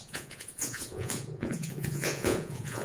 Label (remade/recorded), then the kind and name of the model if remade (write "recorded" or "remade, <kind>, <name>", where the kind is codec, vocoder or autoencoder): remade, vocoder, Vocos